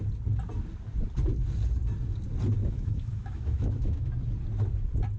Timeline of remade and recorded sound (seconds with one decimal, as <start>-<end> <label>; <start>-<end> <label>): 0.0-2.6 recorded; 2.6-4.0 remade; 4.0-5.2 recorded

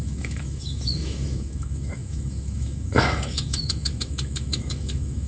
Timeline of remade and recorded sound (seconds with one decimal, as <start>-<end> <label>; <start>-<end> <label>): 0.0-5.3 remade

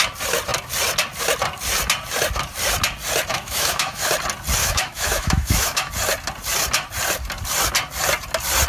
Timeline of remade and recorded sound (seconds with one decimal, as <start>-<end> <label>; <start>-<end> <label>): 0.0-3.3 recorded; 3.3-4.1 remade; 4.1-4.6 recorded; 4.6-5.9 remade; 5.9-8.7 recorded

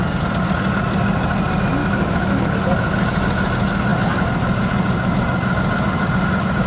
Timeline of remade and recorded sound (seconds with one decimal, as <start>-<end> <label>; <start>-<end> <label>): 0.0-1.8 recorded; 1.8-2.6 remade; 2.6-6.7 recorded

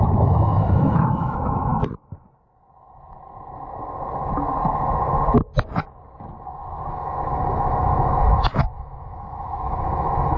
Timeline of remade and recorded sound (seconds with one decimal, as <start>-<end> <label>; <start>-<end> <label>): 0.0-1.7 remade; 1.7-6.9 recorded; 6.9-10.4 remade

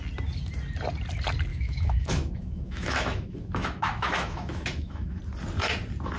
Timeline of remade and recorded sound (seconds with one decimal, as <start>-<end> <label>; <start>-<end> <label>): 0.0-1.5 recorded; 1.5-5.2 remade; 5.2-6.2 recorded

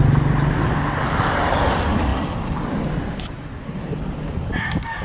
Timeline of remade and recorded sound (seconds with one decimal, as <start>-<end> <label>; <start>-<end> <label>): 0.0-5.0 recorded